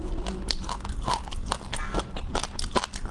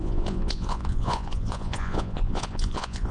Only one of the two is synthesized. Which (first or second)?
second